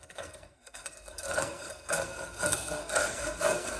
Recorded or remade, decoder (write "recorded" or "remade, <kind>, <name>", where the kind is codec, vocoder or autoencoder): remade, codec, SNAC